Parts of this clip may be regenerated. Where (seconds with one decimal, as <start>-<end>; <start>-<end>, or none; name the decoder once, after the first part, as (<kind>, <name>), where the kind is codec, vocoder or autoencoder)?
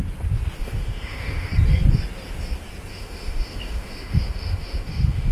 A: 0.6-1.5 (autoencoder, DAC-VAE); 2.9-5.3